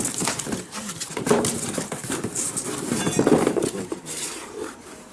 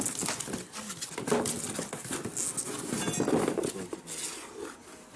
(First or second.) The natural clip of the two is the second